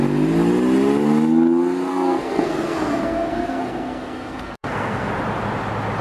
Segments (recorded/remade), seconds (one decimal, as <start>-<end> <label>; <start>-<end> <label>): 0.0-1.9 recorded; 1.9-5.1 remade; 5.1-6.0 recorded